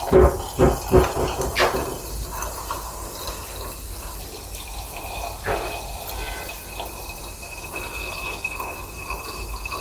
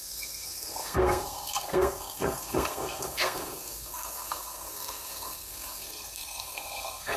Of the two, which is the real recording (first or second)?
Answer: first